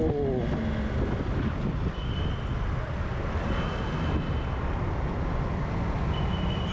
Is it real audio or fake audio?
real